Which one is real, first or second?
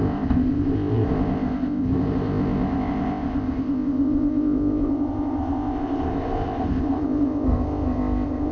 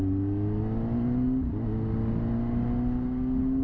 second